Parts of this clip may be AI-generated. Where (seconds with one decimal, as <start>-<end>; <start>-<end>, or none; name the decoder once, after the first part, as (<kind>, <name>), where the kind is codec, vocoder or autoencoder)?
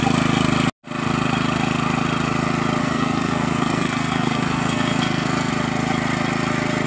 2.8-5.5 (codec, SNAC)